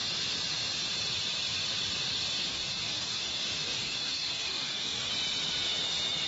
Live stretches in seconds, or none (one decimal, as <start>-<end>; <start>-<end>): 0.0-2.5; 5.1-6.3